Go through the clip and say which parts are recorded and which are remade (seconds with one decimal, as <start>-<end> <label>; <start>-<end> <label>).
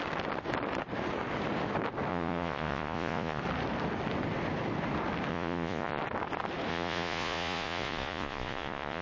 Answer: 0.0-2.1 recorded; 2.1-3.4 remade; 3.4-5.3 recorded; 5.3-6.0 remade; 6.0-6.7 recorded; 6.7-9.0 remade